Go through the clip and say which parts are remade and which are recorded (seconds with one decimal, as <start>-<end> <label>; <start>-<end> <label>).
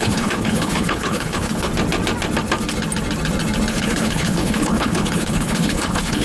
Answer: 0.0-1.7 remade; 1.7-3.7 recorded; 3.7-6.2 remade